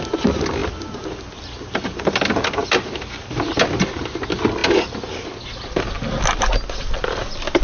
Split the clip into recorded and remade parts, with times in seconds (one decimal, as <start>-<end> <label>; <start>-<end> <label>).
0.0-7.6 recorded